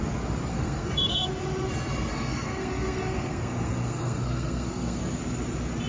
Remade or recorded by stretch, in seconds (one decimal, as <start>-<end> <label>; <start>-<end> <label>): 0.0-0.5 recorded; 0.5-1.3 remade; 1.3-2.1 recorded; 2.1-5.0 remade; 5.0-5.9 recorded